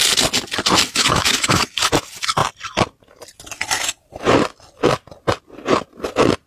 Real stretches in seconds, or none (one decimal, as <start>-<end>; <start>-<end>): 0.0-0.9; 1.6-6.5